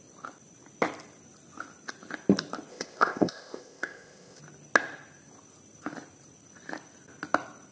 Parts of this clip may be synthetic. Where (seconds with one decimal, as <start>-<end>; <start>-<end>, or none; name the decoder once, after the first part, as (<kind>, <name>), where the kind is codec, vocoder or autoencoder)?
2.7-4.4 (codec, ZipCodec)